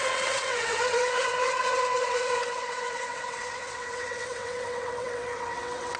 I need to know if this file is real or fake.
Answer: fake